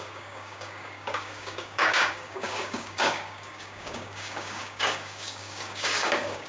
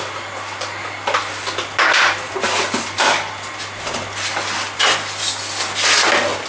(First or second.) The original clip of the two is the second